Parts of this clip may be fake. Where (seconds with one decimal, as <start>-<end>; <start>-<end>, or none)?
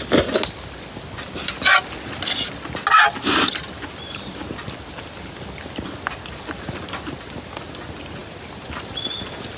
none